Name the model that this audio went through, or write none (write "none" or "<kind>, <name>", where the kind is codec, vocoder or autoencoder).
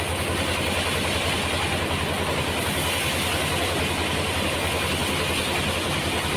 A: none